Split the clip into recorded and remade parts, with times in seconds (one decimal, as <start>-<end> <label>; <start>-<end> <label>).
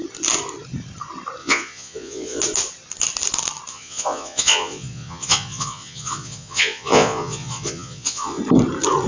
0.0-1.4 recorded; 1.4-2.4 remade; 2.4-3.7 recorded; 3.7-8.4 remade; 8.4-9.1 recorded